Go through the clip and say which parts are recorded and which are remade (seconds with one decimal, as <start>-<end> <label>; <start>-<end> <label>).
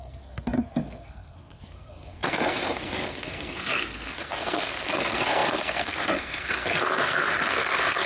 0.0-8.1 remade